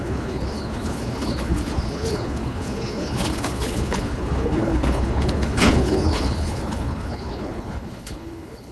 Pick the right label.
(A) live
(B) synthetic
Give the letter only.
B